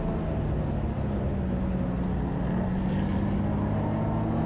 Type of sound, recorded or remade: recorded